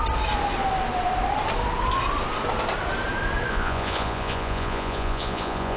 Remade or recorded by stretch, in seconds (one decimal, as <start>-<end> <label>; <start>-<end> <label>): 0.0-3.5 recorded; 3.5-5.8 remade